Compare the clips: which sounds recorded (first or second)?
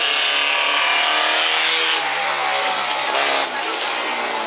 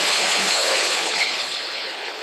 first